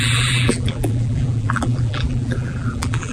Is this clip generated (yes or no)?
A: yes